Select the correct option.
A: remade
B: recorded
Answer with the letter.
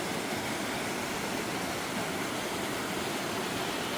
B